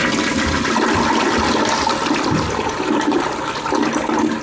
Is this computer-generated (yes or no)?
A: no